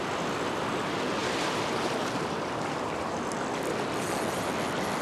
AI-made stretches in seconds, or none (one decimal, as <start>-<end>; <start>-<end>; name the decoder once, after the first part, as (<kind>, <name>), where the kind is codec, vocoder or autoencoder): none